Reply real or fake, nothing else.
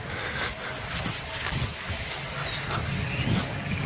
real